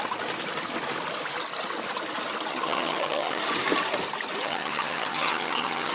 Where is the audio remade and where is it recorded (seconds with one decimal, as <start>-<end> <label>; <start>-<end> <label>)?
0.0-2.5 recorded; 2.5-3.4 remade; 3.4-4.4 recorded; 4.4-5.9 remade